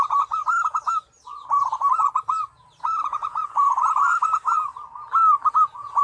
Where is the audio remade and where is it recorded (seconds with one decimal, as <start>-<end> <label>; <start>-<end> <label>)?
0.0-0.4 remade; 0.4-2.8 recorded; 2.8-4.1 remade; 4.1-5.5 recorded; 5.5-6.0 remade

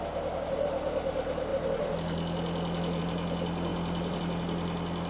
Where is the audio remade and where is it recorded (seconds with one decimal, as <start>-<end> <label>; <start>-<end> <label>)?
0.0-3.7 recorded; 3.7-4.2 remade; 4.2-5.1 recorded

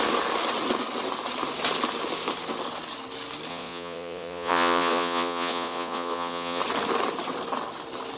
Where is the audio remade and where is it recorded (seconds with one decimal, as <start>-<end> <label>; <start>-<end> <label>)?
0.0-3.5 recorded; 3.5-6.6 remade; 6.6-8.2 recorded

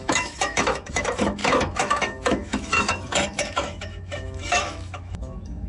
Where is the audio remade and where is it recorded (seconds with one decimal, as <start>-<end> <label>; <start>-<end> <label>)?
0.0-5.7 remade

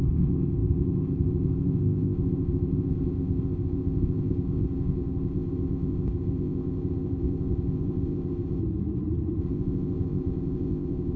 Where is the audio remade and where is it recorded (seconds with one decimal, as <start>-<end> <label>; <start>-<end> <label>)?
0.0-8.6 remade; 8.6-9.4 recorded; 9.4-11.2 remade